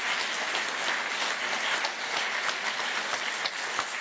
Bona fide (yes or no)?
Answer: yes